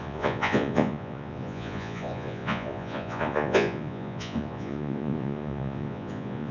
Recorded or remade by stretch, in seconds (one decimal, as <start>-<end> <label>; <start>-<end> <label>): 0.0-6.5 remade